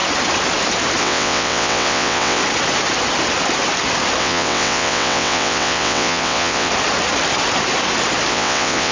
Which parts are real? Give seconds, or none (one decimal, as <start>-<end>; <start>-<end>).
0.0-1.0; 2.4-4.2; 6.7-8.3